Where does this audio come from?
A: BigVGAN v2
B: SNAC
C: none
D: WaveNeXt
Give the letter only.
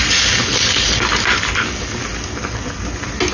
C